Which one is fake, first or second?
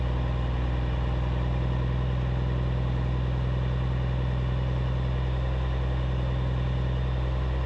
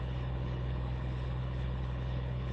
second